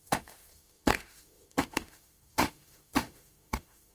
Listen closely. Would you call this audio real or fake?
fake